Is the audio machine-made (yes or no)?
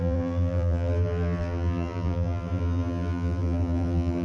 yes